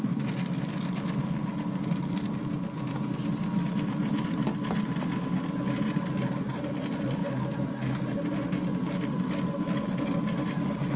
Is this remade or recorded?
recorded